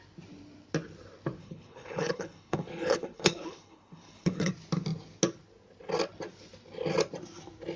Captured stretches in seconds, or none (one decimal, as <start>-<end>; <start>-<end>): 0.0-1.4; 4.5-7.8